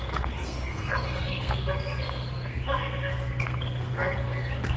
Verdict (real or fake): fake